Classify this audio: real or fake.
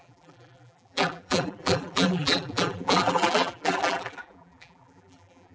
fake